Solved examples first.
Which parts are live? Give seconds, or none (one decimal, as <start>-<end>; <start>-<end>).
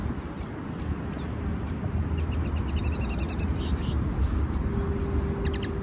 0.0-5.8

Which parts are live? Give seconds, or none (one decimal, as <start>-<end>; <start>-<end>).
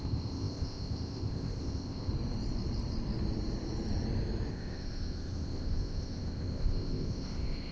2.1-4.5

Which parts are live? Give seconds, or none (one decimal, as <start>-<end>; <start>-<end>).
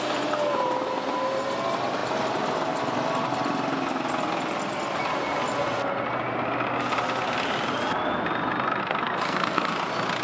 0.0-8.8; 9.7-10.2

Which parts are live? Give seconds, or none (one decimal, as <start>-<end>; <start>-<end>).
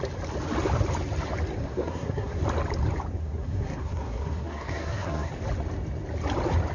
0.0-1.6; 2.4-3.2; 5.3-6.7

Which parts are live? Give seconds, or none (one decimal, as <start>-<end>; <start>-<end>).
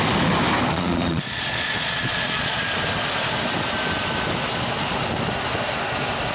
0.0-0.7; 2.6-6.3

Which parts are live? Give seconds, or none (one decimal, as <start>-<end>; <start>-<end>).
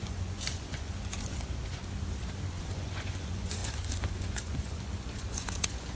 1.8-2.5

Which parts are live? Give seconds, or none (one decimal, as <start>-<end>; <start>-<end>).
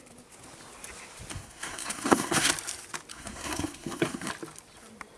0.0-1.3; 2.5-3.1; 4.3-5.2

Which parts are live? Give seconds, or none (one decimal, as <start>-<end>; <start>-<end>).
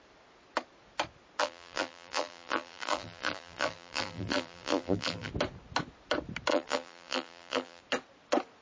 0.0-1.4; 5.3-6.5; 7.8-8.6